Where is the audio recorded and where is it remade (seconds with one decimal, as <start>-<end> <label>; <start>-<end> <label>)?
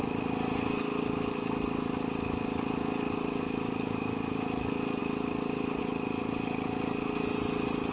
0.0-7.9 recorded